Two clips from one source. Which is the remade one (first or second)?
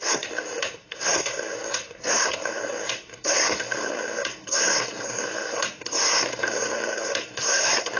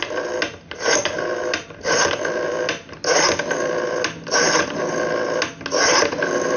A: first